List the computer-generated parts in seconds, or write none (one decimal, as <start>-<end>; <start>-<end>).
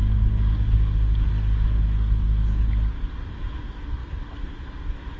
none